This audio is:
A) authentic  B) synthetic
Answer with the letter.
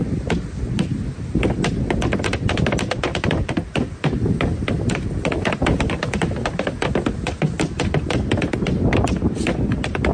A